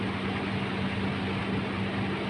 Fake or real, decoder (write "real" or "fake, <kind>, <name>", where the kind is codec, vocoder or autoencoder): real